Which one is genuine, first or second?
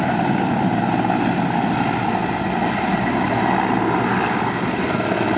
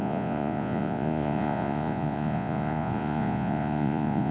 first